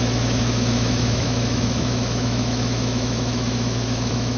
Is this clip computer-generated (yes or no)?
yes